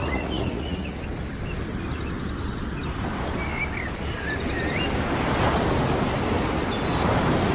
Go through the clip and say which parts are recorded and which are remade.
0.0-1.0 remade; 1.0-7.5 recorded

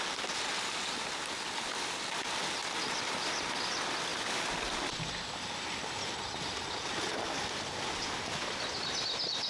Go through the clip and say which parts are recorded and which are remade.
0.0-9.5 recorded

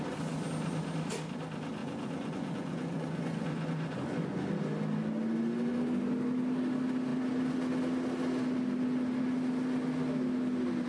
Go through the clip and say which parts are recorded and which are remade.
0.0-1.8 recorded; 1.8-4.5 remade; 4.5-10.9 recorded

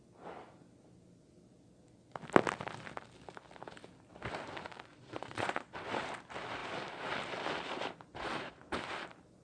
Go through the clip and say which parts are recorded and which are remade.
0.0-4.9 recorded; 4.9-5.7 remade; 5.7-8.1 recorded; 8.1-8.7 remade; 8.7-9.4 recorded

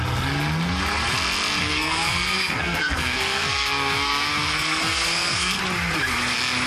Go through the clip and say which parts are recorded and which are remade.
0.0-1.6 recorded; 1.6-5.6 remade; 5.6-6.7 recorded

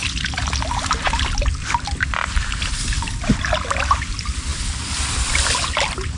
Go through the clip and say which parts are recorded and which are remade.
0.0-6.2 recorded

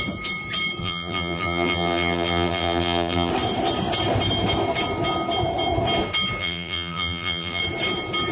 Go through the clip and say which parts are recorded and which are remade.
0.0-0.8 recorded; 0.8-3.3 remade; 3.3-6.4 recorded; 6.4-7.6 remade; 7.6-8.3 recorded

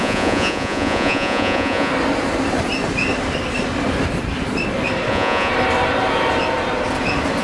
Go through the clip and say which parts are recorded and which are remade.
0.0-1.9 remade; 1.9-5.1 recorded; 5.1-5.5 remade; 5.5-7.4 recorded